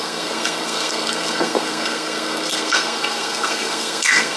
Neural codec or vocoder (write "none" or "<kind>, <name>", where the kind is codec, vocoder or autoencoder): codec, SNAC